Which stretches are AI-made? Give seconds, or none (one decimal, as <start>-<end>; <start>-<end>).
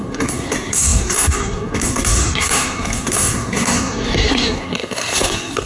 0.0-5.7